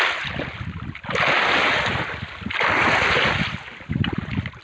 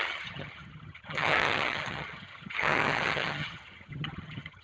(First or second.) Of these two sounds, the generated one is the second